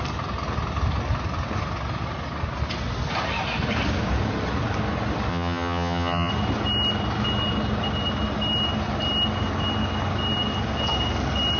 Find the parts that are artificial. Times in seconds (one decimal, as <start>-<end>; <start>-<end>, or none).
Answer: 5.3-6.3